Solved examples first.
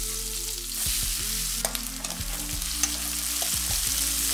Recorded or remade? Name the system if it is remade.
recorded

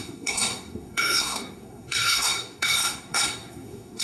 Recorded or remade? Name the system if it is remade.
remade, codec, SNAC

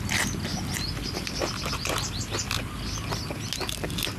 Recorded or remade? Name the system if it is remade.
recorded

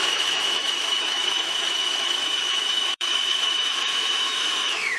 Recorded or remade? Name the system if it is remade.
remade, autoencoder, DAC-VAE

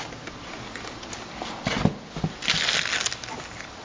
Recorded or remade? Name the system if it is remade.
recorded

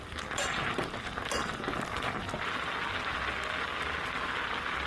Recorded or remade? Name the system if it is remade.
recorded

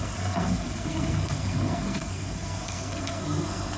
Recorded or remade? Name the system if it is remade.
remade, codec, SNAC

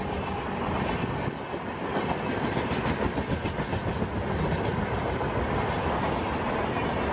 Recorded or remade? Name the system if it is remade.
recorded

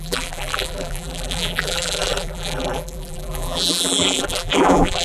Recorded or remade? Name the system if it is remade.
remade, vocoder, BigVGAN v2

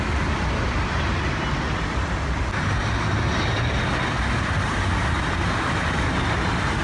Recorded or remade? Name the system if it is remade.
recorded